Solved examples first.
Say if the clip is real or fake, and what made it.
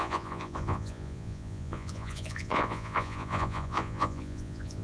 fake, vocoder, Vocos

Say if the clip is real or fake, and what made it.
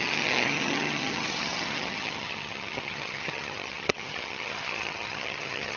fake, vocoder, HiFi-GAN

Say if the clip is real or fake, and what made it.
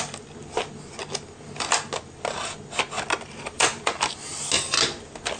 real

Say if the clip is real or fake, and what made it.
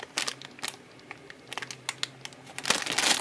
real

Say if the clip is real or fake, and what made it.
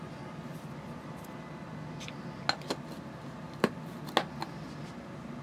real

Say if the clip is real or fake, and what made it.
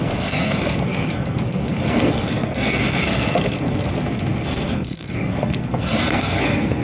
fake, codec, SNAC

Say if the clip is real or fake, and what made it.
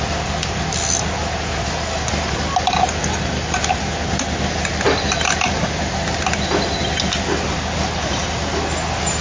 real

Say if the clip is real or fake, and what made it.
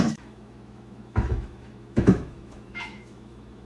fake, autoencoder, DAC-VAE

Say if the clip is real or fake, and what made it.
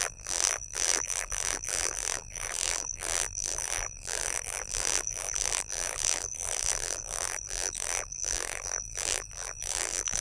fake, vocoder, BigVGAN v2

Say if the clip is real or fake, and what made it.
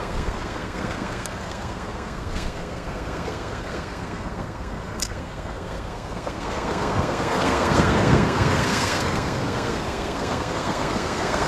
fake, codec, SNAC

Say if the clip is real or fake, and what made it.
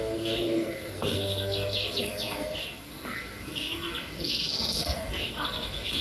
fake, codec, SNAC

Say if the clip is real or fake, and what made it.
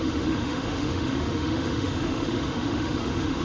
fake, autoencoder, DAC-VAE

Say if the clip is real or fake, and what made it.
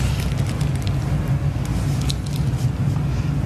real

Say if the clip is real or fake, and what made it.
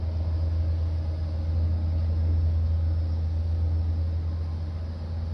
real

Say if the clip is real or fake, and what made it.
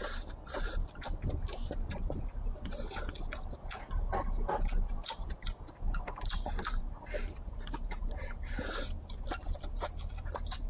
real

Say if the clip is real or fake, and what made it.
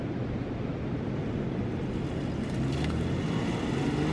real